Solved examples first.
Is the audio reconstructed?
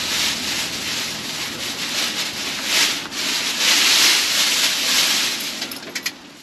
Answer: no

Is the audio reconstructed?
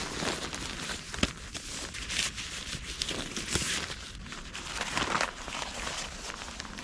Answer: no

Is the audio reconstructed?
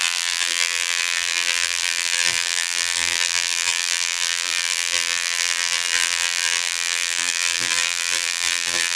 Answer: yes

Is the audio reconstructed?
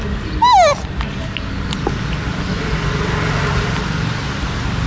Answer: no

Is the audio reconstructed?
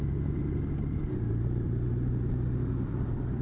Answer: yes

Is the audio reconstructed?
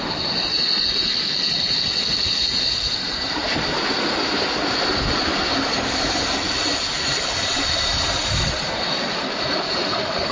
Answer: yes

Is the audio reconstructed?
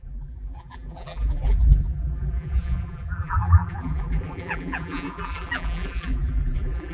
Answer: yes